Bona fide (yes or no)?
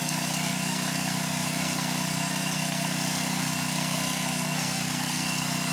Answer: no